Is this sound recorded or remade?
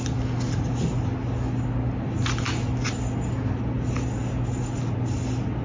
recorded